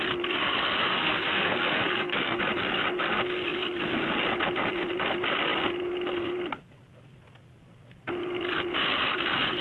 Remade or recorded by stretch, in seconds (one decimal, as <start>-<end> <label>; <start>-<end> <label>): 0.0-0.9 recorded; 0.9-2.4 remade; 2.4-9.6 recorded